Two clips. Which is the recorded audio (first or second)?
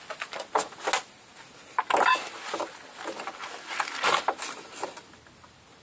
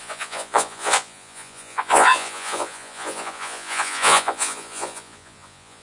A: first